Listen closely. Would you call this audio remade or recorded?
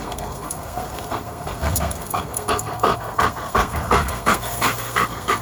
remade